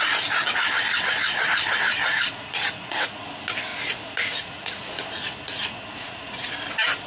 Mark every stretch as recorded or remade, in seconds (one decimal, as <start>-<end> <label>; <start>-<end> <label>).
0.0-1.9 recorded; 1.9-3.2 remade; 3.2-3.7 recorded; 3.7-6.5 remade; 6.5-7.1 recorded